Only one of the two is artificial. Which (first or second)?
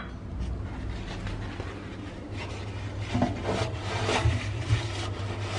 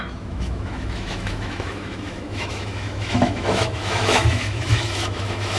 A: second